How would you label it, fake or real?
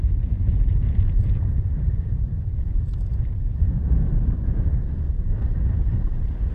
fake